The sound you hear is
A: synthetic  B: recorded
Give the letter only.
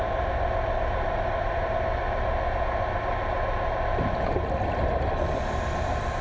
B